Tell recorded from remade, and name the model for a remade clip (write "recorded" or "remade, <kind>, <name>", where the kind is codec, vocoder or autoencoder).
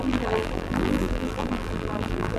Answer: remade, vocoder, BigVGAN v2